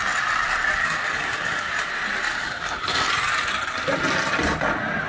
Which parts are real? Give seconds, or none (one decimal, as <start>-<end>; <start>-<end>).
0.0-0.8; 1.7-2.4; 3.1-5.1